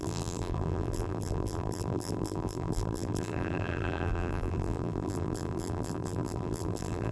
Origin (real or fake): fake